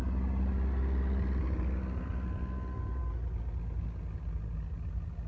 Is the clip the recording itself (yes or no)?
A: yes